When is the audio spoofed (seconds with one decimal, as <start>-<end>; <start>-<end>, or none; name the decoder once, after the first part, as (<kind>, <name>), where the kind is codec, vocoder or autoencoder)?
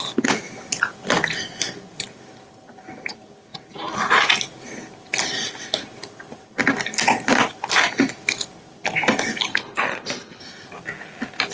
9.5-10.4 (codec, HILCodec)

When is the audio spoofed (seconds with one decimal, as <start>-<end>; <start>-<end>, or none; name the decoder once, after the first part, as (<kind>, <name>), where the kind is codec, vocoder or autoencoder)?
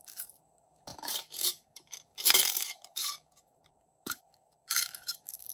0.0-5.5 (codec, DAC)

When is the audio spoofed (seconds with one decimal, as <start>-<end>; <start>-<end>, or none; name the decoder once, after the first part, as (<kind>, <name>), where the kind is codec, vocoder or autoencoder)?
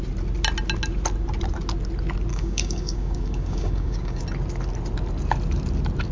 2.3-4.2 (codec, DAC)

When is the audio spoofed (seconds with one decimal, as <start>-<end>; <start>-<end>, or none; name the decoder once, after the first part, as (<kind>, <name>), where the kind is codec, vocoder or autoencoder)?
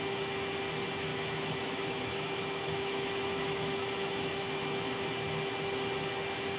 1.1-5.1 (autoencoder, DAC-VAE)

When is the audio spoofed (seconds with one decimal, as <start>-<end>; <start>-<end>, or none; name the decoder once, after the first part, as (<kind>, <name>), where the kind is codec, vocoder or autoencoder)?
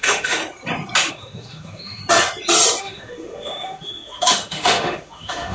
0.0-0.4 (autoencoder, DAC-VAE); 1.1-2.0; 2.8-5.5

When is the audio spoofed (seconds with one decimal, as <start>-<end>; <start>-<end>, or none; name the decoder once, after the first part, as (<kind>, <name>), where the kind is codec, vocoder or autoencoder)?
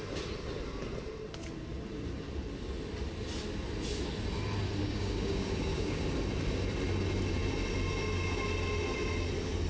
4.8-6.0 (codec, DAC)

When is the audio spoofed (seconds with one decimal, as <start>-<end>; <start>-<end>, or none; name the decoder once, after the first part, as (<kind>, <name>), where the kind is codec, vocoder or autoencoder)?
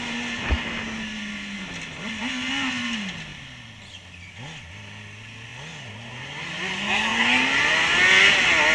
none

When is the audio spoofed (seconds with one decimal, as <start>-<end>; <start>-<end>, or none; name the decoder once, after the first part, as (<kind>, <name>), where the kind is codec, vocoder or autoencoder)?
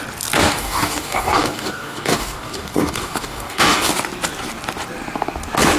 0.4-3.9 (codec, DAC)